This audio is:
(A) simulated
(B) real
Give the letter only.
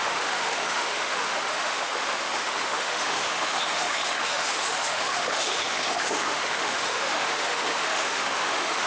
A